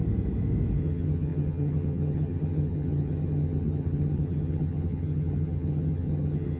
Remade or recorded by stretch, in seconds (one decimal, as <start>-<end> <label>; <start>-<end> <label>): 0.0-0.8 recorded; 0.8-6.6 remade